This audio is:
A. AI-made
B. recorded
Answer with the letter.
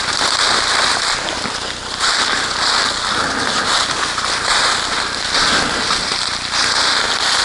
B